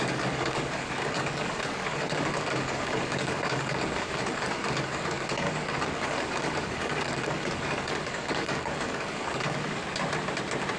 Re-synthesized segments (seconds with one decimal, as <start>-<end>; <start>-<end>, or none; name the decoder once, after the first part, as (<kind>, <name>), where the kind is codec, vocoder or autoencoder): 0.0-9.8 (codec, DAC)